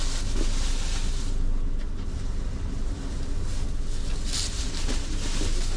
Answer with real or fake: real